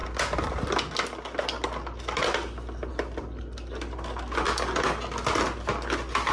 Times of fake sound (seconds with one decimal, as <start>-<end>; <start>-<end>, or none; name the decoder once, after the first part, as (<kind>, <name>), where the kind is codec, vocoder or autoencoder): none